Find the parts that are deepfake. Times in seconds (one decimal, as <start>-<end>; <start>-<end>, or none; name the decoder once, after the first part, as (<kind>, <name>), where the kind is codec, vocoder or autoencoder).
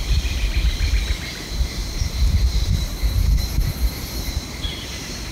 1.8-3.7 (vocoder, BigVGAN v2)